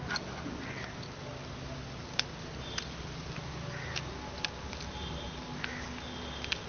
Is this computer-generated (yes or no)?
no